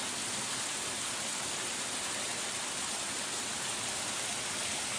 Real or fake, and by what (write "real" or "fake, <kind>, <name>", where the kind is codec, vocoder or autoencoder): real